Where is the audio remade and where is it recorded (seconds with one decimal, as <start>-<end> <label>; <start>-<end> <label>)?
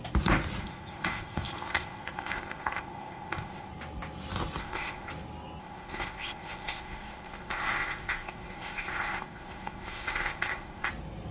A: 0.0-0.6 recorded; 0.6-3.7 remade; 3.7-4.6 recorded; 4.6-5.1 remade; 5.1-5.6 recorded; 5.6-10.9 remade; 10.9-11.3 recorded